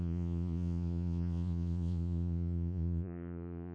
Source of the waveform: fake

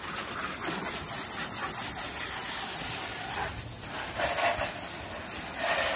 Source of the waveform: real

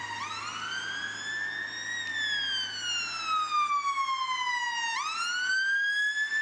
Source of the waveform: real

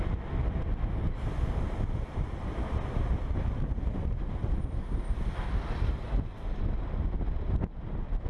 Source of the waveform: real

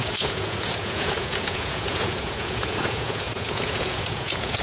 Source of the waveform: fake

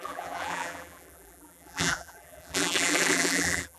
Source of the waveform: fake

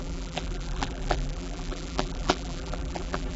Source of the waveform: fake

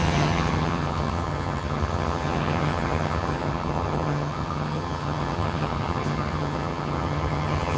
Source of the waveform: fake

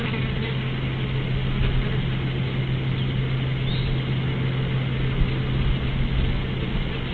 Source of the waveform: real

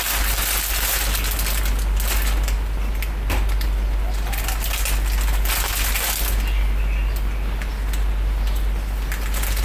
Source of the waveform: real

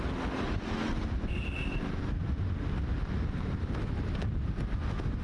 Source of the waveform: real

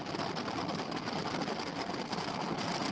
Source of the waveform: real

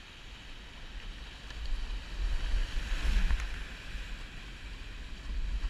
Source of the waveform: real